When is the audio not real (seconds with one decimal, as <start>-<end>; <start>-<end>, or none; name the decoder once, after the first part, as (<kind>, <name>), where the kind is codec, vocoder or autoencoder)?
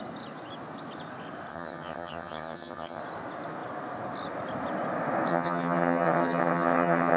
1.5-3.0 (vocoder, HiFi-GAN); 5.3-7.2